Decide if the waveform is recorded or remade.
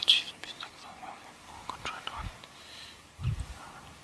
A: recorded